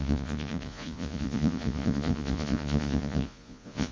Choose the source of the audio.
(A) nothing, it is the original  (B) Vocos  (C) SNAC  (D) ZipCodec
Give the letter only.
B